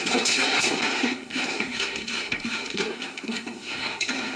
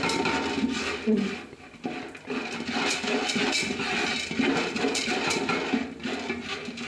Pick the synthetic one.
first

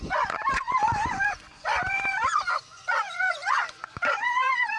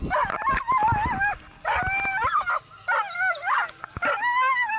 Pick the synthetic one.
first